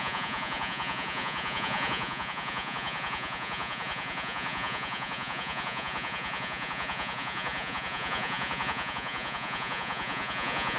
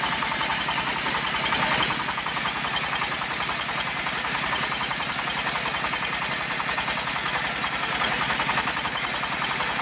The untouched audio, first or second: second